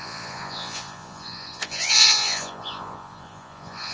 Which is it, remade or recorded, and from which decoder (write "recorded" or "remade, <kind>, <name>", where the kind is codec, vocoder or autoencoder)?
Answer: remade, vocoder, Vocos